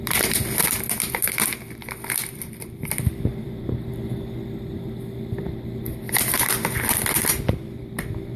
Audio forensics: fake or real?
fake